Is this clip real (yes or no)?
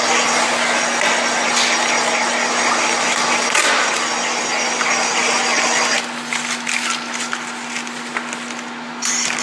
yes